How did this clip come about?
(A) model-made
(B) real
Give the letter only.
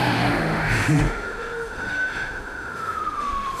A